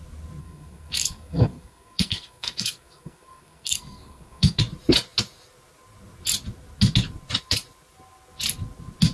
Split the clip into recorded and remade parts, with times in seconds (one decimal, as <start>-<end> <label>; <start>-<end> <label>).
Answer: 0.0-0.4 recorded; 0.4-4.6 remade; 4.6-9.1 recorded